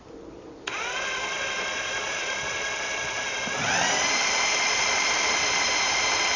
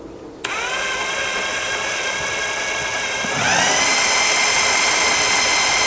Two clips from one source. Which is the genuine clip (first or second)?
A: second